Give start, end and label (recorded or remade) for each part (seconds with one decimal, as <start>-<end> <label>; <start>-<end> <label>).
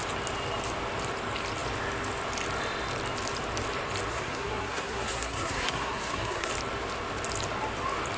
0.0-4.1 recorded; 4.1-6.5 remade; 6.5-8.2 recorded